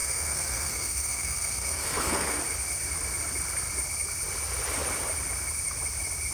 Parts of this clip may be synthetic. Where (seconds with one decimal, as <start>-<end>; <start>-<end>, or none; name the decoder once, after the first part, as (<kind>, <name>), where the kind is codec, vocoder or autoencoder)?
0.0-2.4 (codec, SNAC)